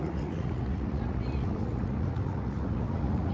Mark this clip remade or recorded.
remade